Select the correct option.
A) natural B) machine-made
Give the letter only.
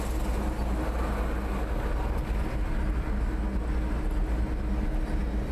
A